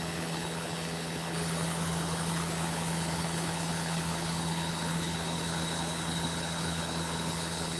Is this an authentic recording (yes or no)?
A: no